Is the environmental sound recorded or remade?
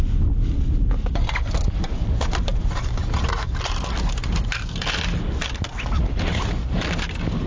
recorded